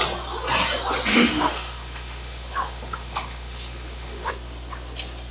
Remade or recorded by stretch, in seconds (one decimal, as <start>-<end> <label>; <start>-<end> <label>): 0.0-1.1 recorded; 1.1-4.3 remade; 4.3-5.3 recorded